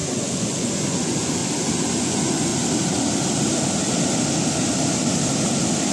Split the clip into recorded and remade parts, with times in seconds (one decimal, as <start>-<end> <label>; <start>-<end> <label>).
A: 0.0-1.4 remade; 1.4-2.0 recorded; 2.0-2.5 remade; 2.5-5.9 recorded